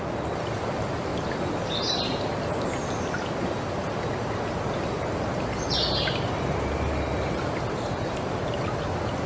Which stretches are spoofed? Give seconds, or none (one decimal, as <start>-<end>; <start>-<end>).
none